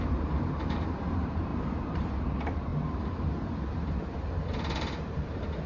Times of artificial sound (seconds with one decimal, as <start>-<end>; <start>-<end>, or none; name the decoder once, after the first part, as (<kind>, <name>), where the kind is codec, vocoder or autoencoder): 0.0-2.7 (vocoder, BigVGAN v2); 3.4-5.7